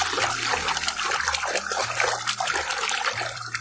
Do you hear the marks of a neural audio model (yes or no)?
no